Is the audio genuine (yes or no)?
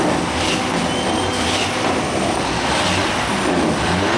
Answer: yes